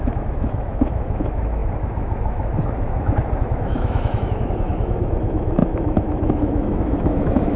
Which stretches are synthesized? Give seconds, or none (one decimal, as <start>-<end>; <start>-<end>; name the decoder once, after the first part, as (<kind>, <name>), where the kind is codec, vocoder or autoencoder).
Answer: 0.0-7.6 (autoencoder, DAC-VAE)